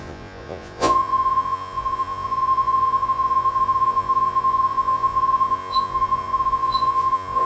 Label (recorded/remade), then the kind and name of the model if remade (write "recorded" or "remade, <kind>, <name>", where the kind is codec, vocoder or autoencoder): remade, vocoder, Vocos